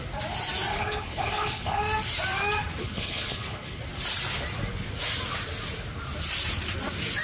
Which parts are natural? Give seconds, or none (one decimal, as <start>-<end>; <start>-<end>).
0.0-0.7; 1.8-2.8; 3.8-7.2